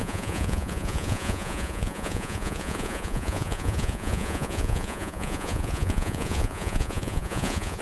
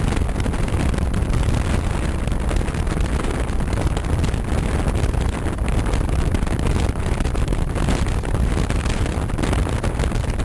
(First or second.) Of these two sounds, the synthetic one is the first